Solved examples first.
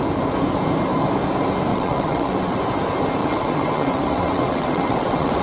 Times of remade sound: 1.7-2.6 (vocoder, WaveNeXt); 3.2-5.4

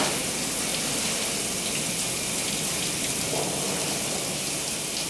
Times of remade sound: none

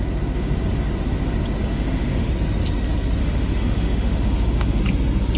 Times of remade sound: 1.7-2.3 (autoencoder, DAC-VAE); 3.2-4.8

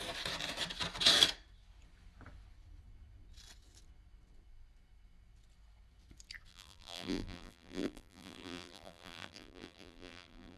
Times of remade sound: 6.5-10.6 (vocoder, BigVGAN v2)